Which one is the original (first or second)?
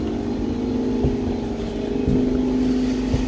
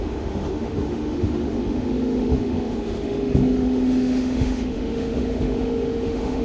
first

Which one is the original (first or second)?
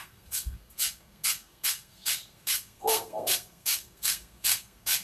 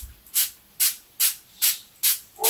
second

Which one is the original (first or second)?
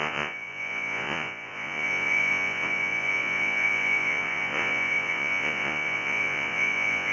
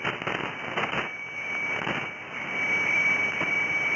second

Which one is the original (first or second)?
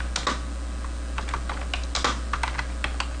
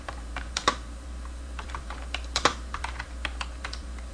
first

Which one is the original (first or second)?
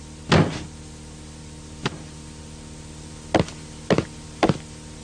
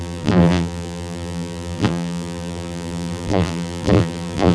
first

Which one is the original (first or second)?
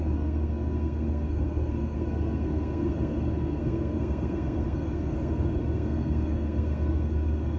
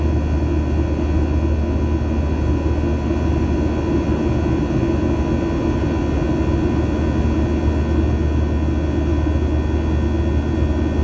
second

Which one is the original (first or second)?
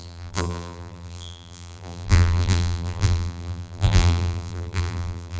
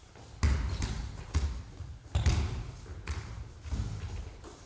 second